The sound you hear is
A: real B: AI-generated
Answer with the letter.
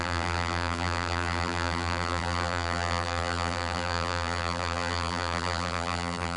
B